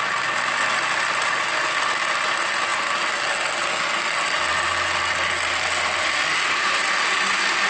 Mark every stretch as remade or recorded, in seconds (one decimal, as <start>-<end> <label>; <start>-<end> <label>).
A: 0.0-7.7 recorded